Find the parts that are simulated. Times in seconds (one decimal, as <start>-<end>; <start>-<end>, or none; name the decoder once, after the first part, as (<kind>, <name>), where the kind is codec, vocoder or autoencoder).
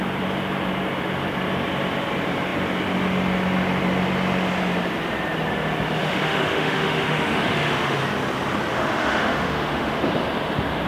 6.0-8.0 (autoencoder, DAC-VAE); 8.7-10.0